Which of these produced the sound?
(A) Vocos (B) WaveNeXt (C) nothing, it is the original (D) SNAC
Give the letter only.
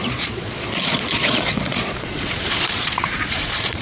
A